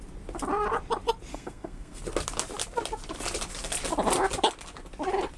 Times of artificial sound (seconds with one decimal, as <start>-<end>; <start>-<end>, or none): 1.3-2.0